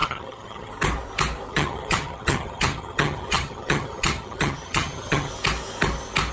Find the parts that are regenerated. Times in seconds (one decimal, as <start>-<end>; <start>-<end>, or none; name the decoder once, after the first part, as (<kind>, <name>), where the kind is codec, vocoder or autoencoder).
0.0-0.7 (vocoder, HiFi-GAN); 1.5-5.3